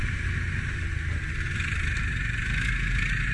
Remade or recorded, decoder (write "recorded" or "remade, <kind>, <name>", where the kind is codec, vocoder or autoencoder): recorded